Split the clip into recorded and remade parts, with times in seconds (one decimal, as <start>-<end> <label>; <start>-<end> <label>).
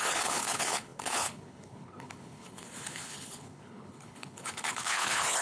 0.0-5.4 remade